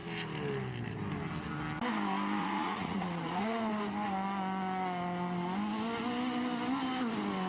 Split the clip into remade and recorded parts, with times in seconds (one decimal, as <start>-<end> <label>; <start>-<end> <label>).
0.0-2.4 recorded; 2.4-3.7 remade; 3.7-7.5 recorded